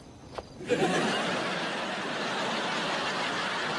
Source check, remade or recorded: recorded